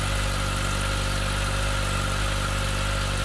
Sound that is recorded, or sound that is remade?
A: recorded